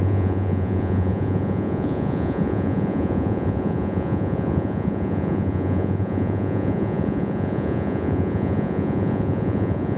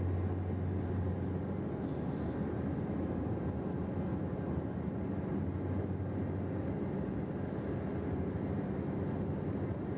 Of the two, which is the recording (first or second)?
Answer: second